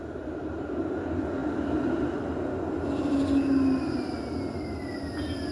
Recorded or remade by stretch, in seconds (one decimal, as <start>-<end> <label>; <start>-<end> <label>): 0.0-5.5 recorded